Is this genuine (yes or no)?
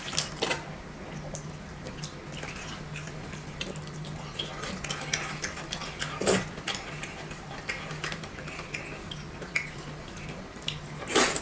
yes